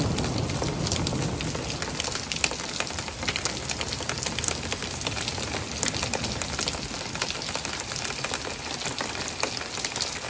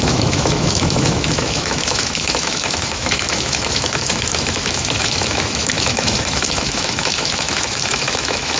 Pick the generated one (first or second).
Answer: second